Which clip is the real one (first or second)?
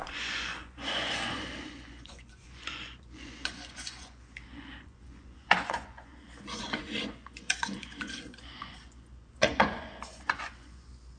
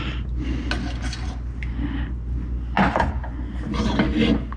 second